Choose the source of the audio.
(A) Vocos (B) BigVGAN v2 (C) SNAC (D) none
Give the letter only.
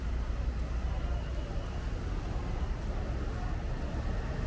D